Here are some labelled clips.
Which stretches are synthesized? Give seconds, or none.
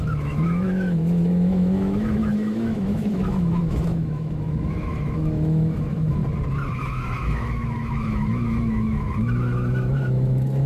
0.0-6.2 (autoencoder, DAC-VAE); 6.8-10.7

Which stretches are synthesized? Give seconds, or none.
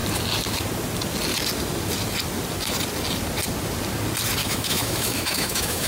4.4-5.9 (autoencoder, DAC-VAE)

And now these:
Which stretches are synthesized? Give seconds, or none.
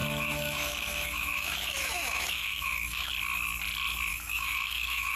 0.0-3.1 (autoencoder, DAC-VAE); 4.1-5.2